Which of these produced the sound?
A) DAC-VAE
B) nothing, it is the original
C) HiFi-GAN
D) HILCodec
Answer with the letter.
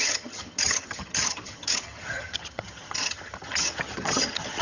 C